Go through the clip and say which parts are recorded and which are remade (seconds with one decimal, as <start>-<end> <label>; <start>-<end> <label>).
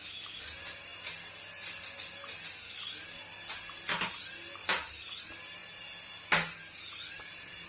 0.0-7.7 recorded